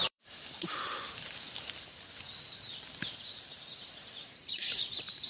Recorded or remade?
remade